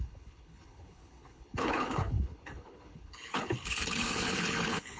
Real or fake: fake